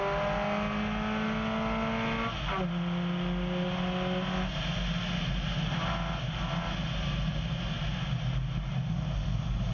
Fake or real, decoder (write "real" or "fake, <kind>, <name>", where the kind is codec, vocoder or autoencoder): real